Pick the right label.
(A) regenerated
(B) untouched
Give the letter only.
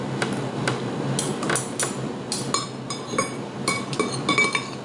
B